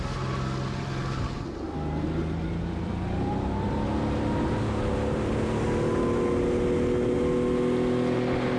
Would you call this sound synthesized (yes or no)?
no